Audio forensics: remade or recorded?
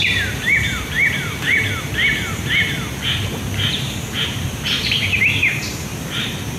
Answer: remade